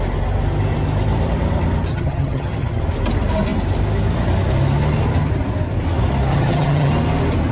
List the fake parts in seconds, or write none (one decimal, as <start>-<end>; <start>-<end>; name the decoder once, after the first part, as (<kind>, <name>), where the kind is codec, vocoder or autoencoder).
1.9-2.8 (vocoder, HiFi-GAN); 6.3-6.9